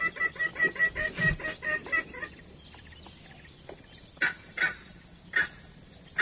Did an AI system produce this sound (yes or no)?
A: no